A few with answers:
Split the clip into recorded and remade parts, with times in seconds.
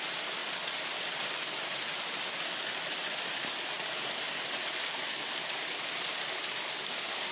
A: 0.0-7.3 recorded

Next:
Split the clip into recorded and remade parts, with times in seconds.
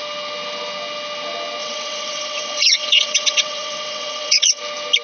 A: 0.0-1.6 recorded; 1.6-4.6 remade; 4.6-5.0 recorded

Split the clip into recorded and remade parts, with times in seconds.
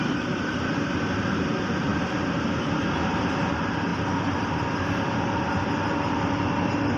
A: 0.0-7.0 remade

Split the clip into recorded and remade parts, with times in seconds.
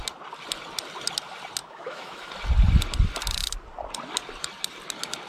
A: 0.0-1.6 recorded; 1.6-2.3 remade; 2.3-5.3 recorded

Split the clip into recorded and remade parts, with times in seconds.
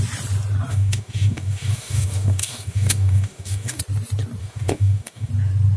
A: 0.0-0.7 recorded; 0.7-3.8 remade; 3.8-4.4 recorded; 4.4-5.3 remade; 5.3-5.8 recorded